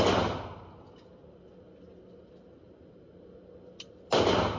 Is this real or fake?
real